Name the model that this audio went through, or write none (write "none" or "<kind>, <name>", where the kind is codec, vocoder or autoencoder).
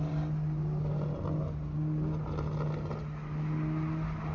none